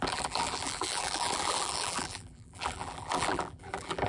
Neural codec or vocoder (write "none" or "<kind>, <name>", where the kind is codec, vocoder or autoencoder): vocoder, BigVGAN v2